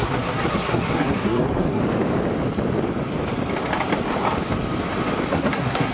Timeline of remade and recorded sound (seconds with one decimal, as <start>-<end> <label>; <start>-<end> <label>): 0.0-1.8 remade; 1.8-5.3 recorded; 5.3-5.9 remade